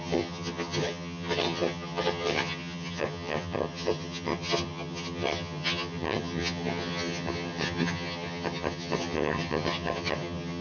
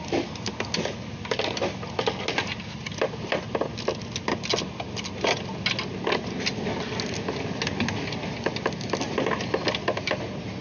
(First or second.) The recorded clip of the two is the second